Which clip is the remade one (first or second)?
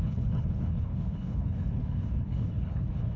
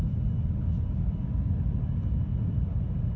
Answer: first